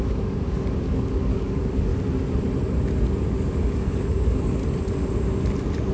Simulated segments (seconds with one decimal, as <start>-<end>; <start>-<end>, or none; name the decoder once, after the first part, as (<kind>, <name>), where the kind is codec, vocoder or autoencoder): 0.0-1.9 (codec, DAC); 3.3-4.6